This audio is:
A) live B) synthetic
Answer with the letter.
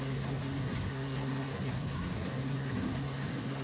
B